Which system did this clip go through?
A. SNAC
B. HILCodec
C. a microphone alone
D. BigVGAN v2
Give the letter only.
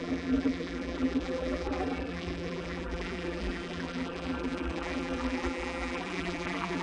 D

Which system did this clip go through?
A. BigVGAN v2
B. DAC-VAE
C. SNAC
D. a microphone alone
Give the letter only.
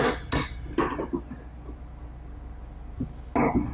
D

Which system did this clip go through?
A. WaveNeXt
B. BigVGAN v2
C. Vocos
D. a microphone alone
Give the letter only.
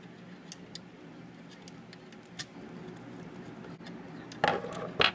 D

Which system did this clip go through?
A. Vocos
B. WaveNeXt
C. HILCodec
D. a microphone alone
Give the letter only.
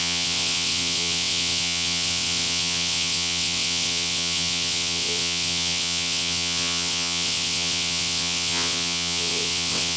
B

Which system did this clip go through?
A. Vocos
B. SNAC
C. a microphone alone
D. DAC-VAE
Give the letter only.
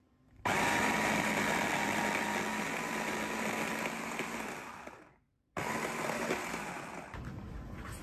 C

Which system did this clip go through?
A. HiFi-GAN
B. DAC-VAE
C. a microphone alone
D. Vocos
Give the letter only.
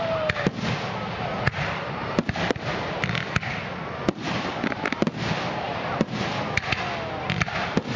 C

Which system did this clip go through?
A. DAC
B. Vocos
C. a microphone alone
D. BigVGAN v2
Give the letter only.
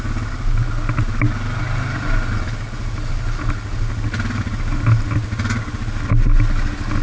C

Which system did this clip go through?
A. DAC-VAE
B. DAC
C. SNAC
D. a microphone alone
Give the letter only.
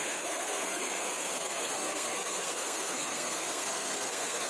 C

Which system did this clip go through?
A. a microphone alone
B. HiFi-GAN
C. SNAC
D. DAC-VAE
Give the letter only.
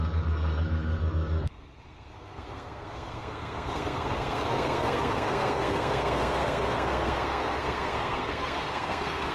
C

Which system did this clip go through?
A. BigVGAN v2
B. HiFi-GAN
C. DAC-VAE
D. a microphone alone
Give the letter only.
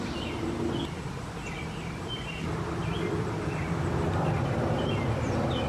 D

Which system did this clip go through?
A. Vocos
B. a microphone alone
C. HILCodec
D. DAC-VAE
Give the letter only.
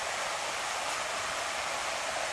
B